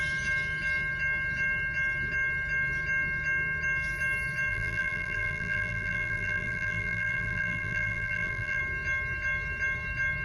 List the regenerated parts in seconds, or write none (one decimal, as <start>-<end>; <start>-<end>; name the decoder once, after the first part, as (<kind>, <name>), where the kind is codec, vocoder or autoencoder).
4.5-8.6 (vocoder, BigVGAN v2)